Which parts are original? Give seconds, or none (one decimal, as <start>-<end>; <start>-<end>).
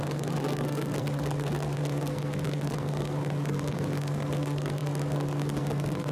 none